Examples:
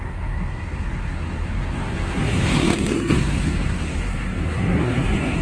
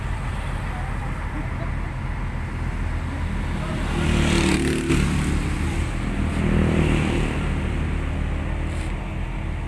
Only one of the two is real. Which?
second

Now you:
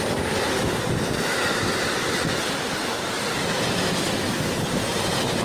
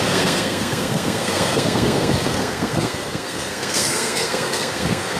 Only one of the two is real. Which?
first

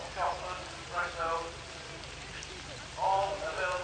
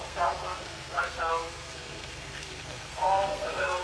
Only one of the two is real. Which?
first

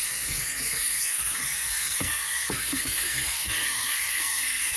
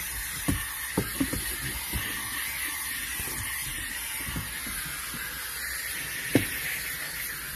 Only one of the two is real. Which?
second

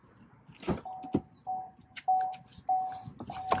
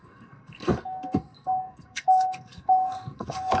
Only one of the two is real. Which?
first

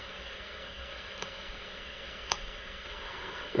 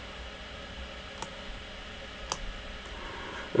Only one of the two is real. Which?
second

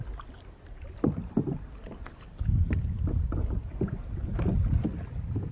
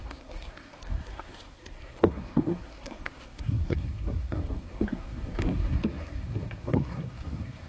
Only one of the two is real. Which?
first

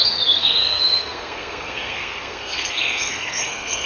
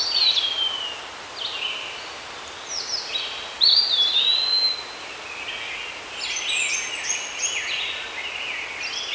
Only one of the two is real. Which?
second